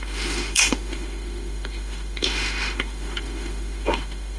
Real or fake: fake